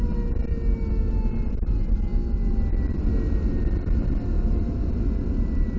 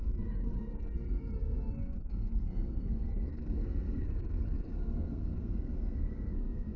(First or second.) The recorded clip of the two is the first